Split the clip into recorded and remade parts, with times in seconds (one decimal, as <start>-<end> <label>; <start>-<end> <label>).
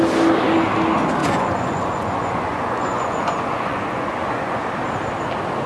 0.0-1.2 recorded; 1.2-4.6 remade; 4.6-5.7 recorded